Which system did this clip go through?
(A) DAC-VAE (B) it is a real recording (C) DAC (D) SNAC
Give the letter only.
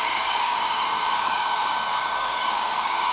C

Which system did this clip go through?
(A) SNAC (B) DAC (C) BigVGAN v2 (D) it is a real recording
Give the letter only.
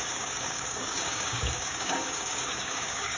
B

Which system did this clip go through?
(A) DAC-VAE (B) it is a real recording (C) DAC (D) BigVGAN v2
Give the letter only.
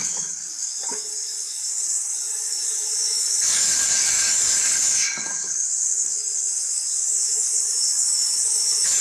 C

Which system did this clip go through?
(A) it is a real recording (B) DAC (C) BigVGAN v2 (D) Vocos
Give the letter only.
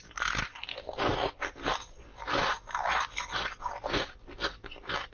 A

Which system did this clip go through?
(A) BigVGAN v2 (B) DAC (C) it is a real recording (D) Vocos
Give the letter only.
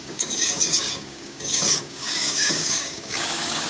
B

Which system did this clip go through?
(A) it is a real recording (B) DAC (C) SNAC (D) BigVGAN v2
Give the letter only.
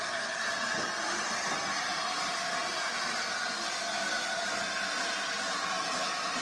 A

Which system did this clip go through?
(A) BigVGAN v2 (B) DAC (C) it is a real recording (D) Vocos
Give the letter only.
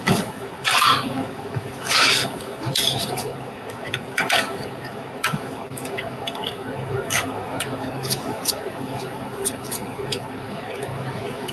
B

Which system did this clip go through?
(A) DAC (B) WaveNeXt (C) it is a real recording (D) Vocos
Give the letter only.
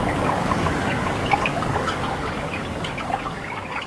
A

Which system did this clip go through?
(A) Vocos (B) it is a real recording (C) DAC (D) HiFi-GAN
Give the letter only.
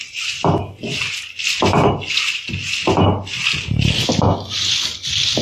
B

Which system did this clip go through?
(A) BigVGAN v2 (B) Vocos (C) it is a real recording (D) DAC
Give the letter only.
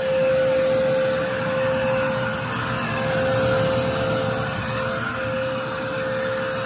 C